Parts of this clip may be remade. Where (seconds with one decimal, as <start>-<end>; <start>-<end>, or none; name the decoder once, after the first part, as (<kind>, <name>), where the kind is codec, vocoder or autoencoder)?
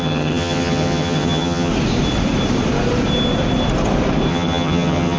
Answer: 0.0-1.7 (vocoder, HiFi-GAN); 4.3-5.2